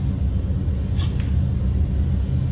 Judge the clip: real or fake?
real